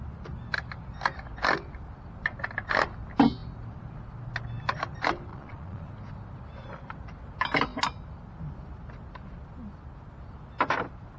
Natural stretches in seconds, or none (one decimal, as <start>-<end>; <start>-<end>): 0.0-5.3; 5.9-11.2